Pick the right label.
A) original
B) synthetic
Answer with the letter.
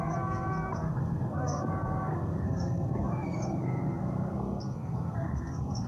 B